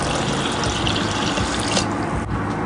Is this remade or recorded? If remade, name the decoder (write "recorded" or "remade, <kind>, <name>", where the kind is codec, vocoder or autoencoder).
recorded